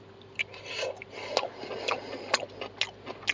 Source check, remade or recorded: recorded